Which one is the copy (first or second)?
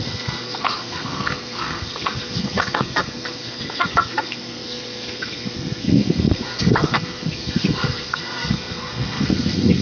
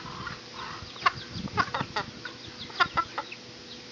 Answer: first